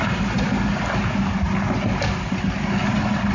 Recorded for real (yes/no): yes